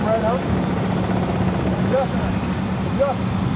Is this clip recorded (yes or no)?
yes